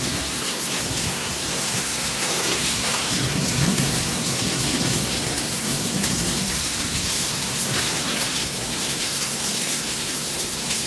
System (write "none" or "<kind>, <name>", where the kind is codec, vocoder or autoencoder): codec, SNAC